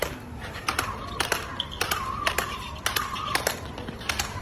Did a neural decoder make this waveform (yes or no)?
no